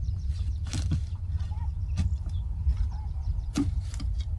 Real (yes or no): yes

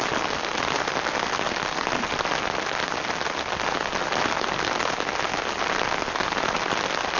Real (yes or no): yes